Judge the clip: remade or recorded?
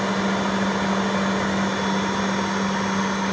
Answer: recorded